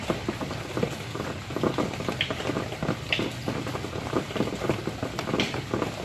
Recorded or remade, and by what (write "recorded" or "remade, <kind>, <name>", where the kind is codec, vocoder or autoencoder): recorded